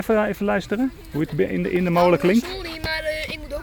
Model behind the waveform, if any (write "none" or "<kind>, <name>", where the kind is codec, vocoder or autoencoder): none